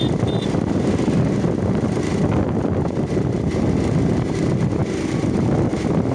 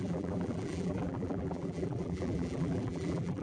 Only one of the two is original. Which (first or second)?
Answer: first